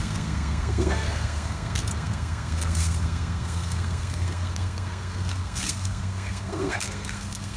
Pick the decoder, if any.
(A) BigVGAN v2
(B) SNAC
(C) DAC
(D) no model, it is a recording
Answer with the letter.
B